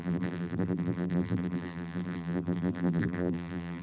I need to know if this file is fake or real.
fake